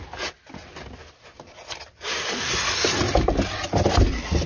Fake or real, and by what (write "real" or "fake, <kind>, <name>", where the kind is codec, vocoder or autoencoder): real